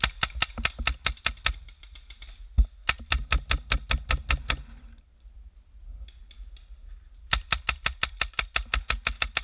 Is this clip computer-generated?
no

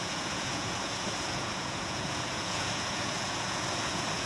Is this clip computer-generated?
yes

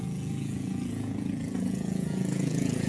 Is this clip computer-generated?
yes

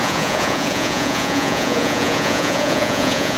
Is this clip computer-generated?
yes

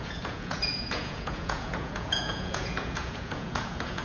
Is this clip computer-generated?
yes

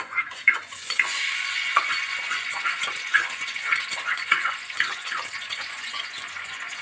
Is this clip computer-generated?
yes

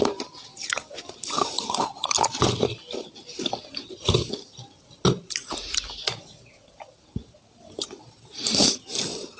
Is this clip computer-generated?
no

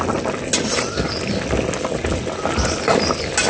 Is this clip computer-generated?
no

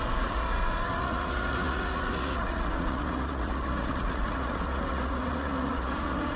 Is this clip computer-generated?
yes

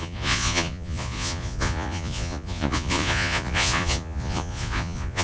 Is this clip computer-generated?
yes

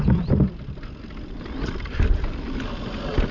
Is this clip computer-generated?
no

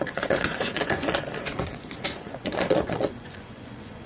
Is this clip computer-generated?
yes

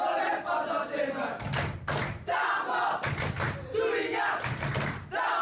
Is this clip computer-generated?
no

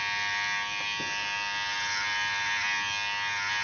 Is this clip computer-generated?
no